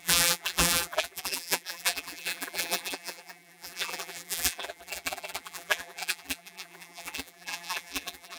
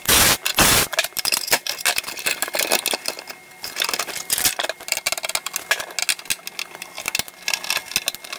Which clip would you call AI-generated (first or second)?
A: first